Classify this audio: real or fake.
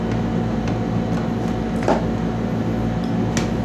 real